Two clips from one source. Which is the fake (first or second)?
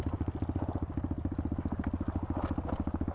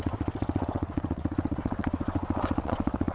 second